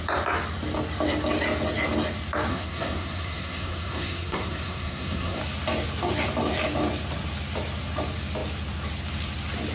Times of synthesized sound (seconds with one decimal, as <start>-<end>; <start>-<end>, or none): 2.5-5.4